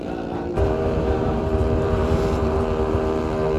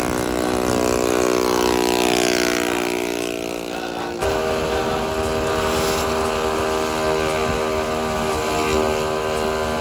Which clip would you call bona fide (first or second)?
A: second